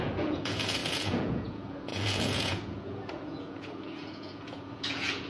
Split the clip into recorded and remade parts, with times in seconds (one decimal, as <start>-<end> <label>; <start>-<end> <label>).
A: 0.0-5.3 remade